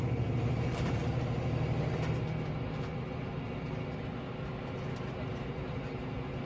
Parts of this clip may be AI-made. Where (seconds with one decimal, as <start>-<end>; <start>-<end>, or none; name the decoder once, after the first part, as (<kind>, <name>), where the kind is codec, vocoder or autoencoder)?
0.0-1.0 (vocoder, BigVGAN v2); 4.9-6.5